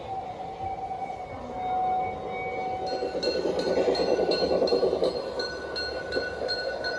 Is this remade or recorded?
recorded